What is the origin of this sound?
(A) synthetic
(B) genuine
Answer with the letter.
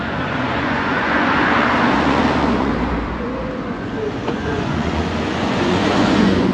A